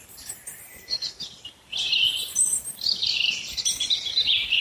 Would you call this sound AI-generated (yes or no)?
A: no